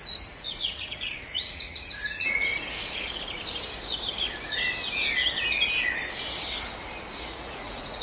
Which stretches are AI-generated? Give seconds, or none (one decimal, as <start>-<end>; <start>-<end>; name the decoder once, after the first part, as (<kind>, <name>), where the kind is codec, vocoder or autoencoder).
0.0-2.5 (vocoder, Vocos); 7.2-8.0

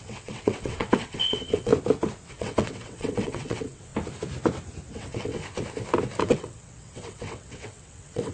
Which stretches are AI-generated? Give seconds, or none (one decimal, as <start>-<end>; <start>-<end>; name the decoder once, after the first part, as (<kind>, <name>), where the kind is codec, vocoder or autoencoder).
0.0-1.7 (vocoder, WaveNeXt); 2.3-3.9; 4.9-5.4; 6.2-8.3

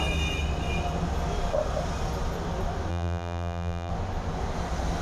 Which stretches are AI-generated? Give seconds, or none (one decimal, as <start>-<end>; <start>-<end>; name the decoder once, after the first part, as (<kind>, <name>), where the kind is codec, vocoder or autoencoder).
2.9-3.9 (vocoder, BigVGAN v2)

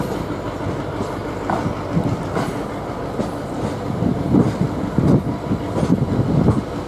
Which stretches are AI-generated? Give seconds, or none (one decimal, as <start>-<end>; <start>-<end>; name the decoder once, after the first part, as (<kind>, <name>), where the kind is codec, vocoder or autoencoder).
4.1-5.8 (vocoder, BigVGAN v2)

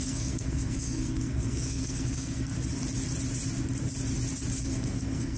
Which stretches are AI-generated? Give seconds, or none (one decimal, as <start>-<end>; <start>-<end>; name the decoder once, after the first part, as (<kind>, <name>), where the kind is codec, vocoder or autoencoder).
0.0-2.5 (codec, SNAC); 4.6-5.4

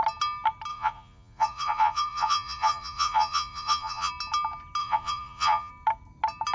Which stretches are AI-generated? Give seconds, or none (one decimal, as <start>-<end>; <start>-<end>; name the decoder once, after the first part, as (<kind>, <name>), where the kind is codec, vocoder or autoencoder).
0.7-4.1 (vocoder, Vocos); 4.8-5.7